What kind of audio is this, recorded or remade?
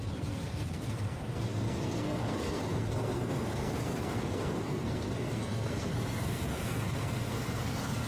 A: remade